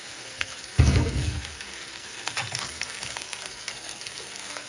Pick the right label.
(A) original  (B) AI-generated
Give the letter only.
B